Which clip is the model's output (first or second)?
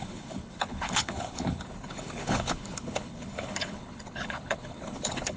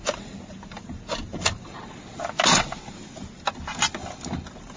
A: first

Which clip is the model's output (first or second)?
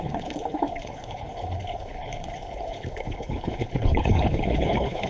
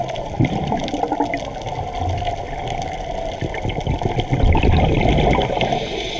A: first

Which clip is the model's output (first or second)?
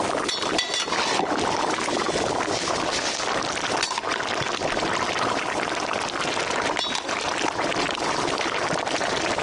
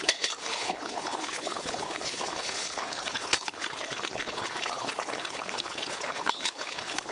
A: second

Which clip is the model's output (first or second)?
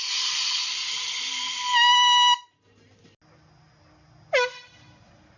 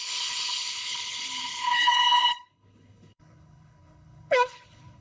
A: second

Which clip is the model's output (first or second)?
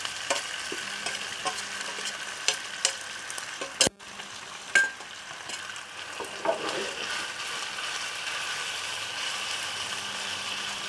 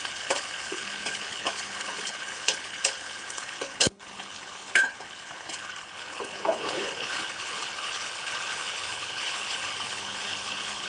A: second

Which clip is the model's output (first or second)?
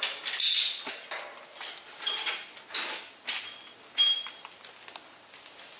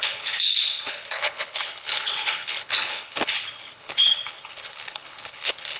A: second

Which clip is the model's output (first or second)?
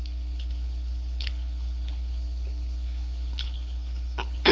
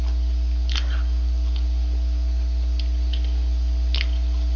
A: first